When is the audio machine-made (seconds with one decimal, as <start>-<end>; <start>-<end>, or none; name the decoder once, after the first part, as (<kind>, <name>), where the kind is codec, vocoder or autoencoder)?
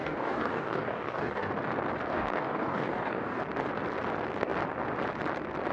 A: 0.0-1.5 (codec, DAC); 2.1-3.4